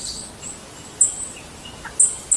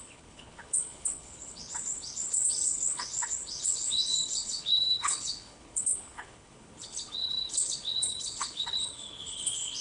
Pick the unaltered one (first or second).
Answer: first